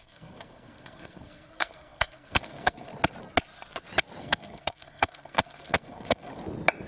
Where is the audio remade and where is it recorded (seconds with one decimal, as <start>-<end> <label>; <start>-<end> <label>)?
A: 0.0-2.9 remade; 2.9-4.2 recorded; 4.2-6.3 remade; 6.3-6.9 recorded